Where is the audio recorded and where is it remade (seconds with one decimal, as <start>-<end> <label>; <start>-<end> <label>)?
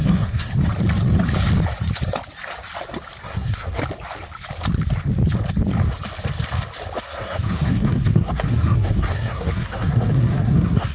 0.0-0.5 remade; 0.5-3.2 recorded; 3.2-3.8 remade; 3.8-7.0 recorded; 7.0-10.9 remade